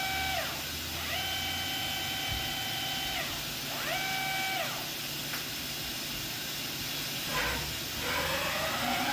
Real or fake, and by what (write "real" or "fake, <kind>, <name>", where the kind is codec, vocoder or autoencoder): real